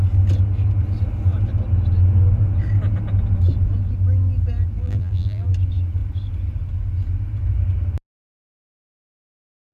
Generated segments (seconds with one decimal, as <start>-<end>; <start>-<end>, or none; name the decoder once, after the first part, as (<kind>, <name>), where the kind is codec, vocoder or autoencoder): 4.8-5.5 (vocoder, BigVGAN v2)